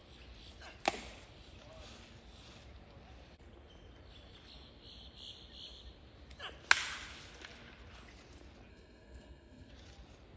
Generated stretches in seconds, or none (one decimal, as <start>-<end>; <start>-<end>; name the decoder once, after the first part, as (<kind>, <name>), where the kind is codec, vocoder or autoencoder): 8.7-9.7 (codec, SNAC)